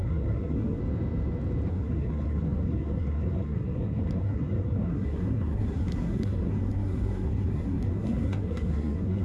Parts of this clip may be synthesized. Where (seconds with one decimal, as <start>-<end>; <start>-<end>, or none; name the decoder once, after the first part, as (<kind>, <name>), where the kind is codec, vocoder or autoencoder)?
0.0-0.8 (codec, SNAC); 1.7-9.2